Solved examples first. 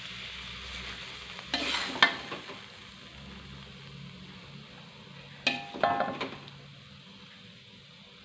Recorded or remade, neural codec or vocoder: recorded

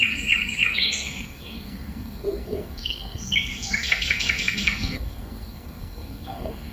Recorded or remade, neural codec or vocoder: remade, codec, SNAC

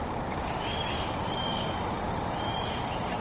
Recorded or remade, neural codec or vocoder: recorded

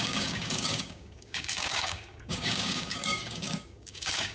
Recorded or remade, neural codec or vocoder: remade, codec, DAC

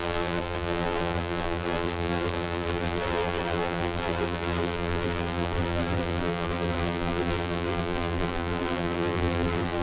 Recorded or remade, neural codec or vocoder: remade, vocoder, BigVGAN v2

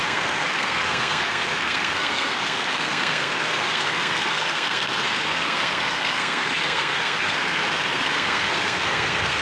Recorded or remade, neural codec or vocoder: remade, codec, SNAC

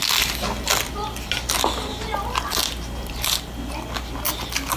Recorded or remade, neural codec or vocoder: recorded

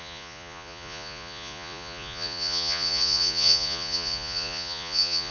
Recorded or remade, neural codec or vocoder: remade, vocoder, Vocos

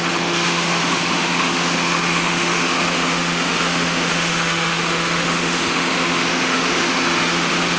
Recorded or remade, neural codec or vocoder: remade, autoencoder, DAC-VAE